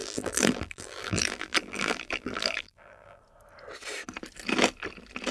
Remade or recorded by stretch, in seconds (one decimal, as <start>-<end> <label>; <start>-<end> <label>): 0.0-3.2 remade; 3.2-5.3 recorded

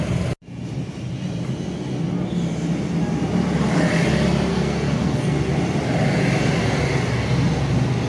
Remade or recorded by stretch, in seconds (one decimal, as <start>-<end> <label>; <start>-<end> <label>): 0.0-4.5 recorded; 4.5-5.5 remade; 5.5-8.1 recorded

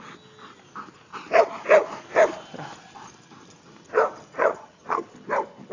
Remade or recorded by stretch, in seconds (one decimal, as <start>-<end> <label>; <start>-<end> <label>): 0.0-4.4 recorded; 4.4-5.0 remade; 5.0-5.7 recorded

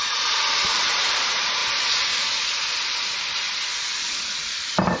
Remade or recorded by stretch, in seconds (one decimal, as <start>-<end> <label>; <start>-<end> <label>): 0.0-1.6 remade; 1.6-4.6 recorded; 4.6-5.0 remade

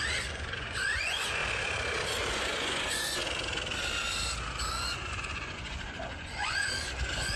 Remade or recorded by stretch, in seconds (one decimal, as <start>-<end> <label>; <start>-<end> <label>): 0.0-1.4 remade; 1.4-2.3 recorded; 2.3-3.2 remade; 3.2-4.7 recorded; 4.7-7.4 remade